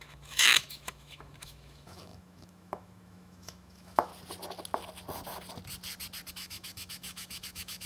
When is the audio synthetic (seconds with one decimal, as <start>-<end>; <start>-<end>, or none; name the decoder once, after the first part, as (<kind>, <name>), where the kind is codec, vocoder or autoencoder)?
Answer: 0.0-4.1 (autoencoder, DAC-VAE); 6.3-7.9